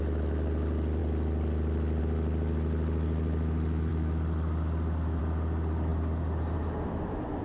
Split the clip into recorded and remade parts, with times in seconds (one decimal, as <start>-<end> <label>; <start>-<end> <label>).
0.0-7.4 recorded